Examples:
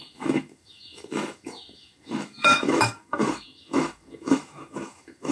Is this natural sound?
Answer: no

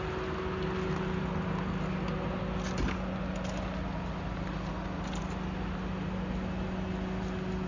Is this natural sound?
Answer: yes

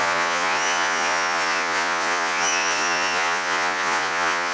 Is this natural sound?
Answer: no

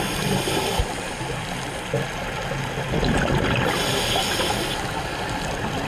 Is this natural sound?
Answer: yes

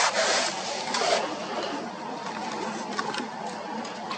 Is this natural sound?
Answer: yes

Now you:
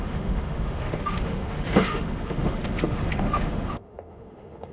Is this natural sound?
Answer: no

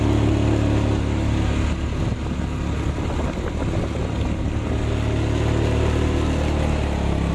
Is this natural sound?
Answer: yes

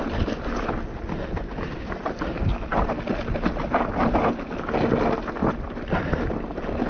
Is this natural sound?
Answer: yes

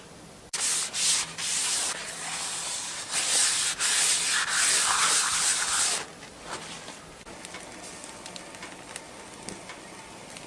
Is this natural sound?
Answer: yes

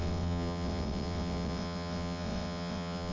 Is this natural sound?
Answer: no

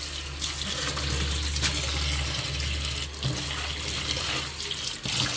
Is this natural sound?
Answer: yes